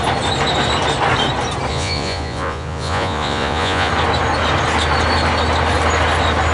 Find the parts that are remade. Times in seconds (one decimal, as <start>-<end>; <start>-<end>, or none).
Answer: 1.7-3.9